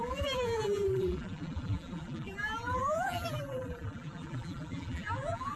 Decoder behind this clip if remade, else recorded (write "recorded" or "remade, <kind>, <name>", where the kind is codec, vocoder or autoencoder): remade, vocoder, BigVGAN v2